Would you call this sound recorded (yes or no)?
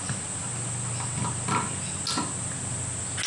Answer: yes